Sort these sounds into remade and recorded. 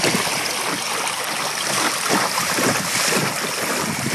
recorded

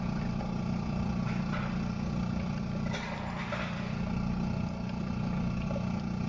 recorded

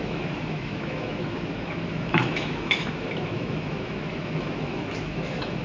remade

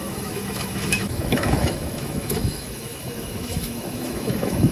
remade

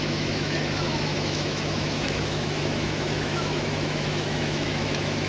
remade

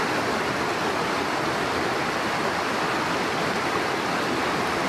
recorded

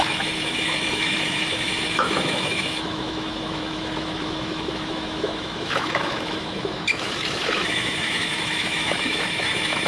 remade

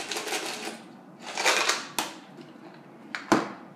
recorded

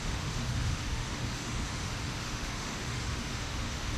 remade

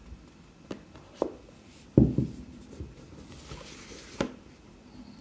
recorded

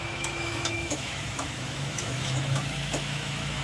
remade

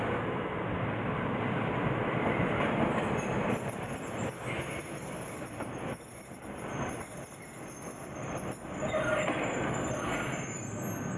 recorded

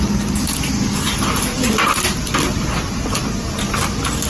recorded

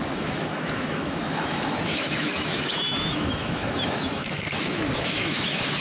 remade